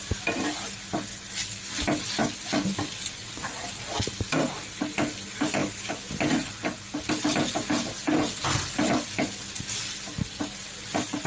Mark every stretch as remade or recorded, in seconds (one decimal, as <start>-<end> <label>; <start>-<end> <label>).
0.0-11.3 remade